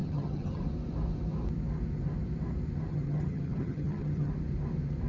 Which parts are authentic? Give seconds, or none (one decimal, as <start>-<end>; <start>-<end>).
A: 0.6-2.9; 4.3-5.1